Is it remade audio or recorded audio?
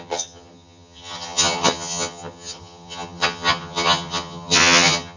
remade